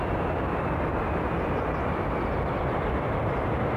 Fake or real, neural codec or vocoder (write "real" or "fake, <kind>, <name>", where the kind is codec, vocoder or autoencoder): real